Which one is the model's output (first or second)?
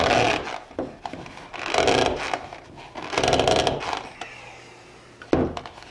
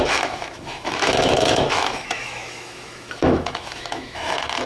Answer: second